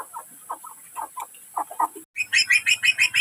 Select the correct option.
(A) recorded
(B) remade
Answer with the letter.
A